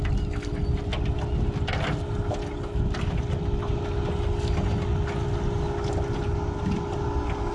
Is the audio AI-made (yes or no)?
no